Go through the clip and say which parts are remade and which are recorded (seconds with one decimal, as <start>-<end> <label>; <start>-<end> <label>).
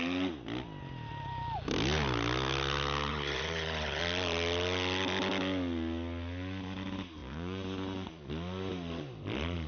0.0-3.1 recorded; 3.1-4.0 remade; 4.0-7.2 recorded; 7.2-8.3 remade; 8.3-9.7 recorded